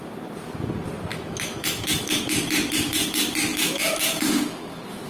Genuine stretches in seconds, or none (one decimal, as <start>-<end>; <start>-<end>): 0.0-1.1; 2.2-3.5